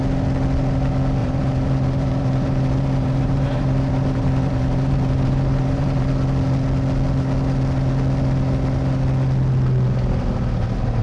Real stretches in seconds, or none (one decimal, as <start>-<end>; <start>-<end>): 0.0-1.2; 6.1-11.0